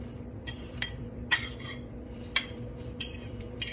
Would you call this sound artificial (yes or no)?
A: yes